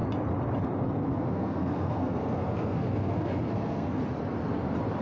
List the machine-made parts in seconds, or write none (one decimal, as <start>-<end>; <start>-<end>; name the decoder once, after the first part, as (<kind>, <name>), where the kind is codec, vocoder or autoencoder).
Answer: 1.0-4.0 (codec, SNAC)